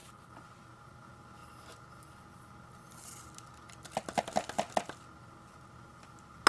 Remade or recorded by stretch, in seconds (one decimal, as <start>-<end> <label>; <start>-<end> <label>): 0.0-6.5 recorded